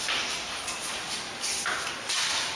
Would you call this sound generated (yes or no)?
yes